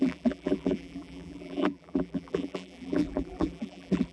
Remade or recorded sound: remade